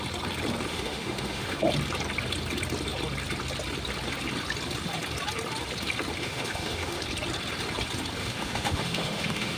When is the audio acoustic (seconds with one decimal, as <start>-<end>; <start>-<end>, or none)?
0.0-0.7; 1.6-6.2; 7.0-8.2